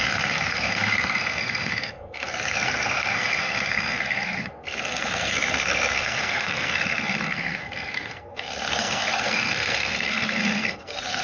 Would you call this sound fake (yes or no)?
yes